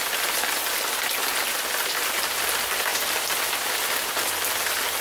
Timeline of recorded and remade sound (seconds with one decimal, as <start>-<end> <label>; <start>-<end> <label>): 0.0-5.0 recorded